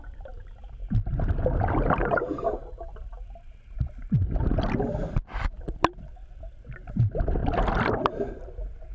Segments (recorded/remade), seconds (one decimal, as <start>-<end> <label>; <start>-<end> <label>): 0.0-0.8 remade; 0.8-5.6 recorded; 5.6-7.4 remade; 7.4-7.9 recorded; 7.9-8.9 remade